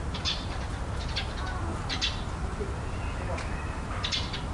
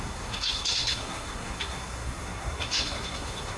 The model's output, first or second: second